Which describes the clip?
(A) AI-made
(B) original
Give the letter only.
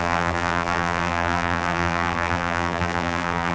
A